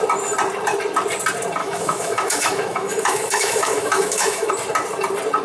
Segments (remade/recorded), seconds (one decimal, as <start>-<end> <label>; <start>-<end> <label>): 0.0-1.6 recorded; 1.6-4.5 remade; 4.5-5.4 recorded